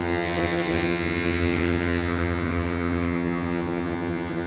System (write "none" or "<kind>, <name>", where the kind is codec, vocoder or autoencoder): vocoder, HiFi-GAN